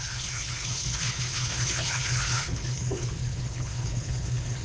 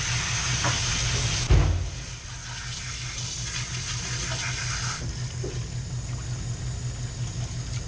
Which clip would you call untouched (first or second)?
second